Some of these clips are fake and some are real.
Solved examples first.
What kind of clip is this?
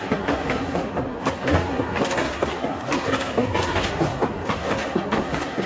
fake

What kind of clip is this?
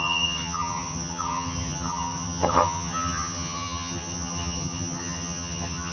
fake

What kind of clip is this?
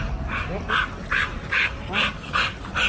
real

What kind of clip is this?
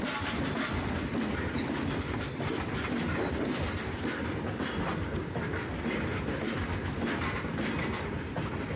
real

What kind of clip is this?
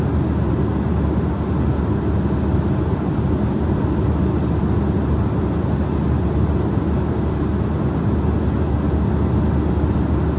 real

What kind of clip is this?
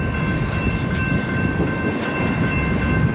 real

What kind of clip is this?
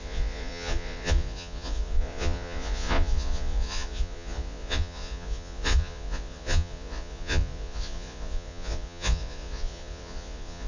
fake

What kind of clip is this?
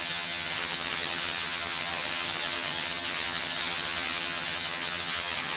fake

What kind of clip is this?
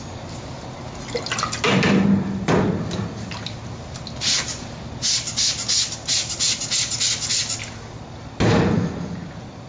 real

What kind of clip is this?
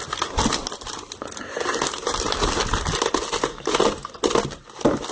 real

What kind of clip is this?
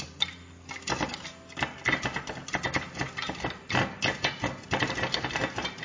real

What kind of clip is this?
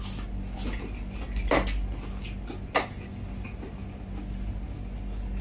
real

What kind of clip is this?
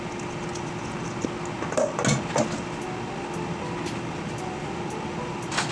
real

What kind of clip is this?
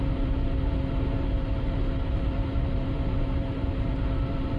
fake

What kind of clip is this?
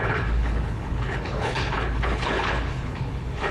fake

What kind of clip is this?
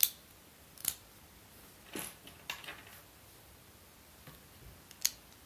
real